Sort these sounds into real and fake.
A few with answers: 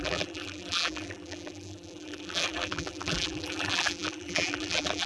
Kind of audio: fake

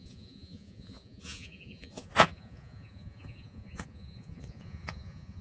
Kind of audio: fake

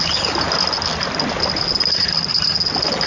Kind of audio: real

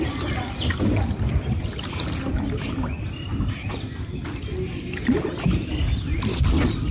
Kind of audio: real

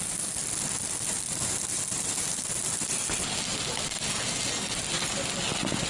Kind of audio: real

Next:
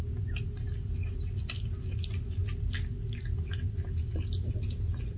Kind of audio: real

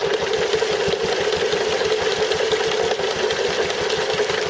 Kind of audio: real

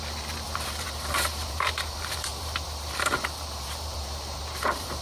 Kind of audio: fake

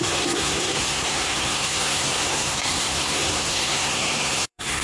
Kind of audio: fake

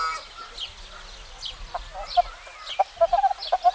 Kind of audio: real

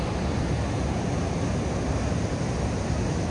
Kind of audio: real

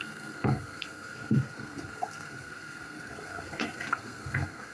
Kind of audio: fake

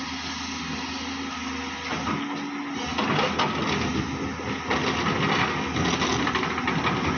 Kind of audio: real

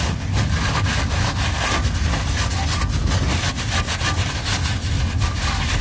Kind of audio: real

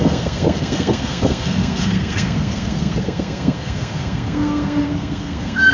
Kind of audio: fake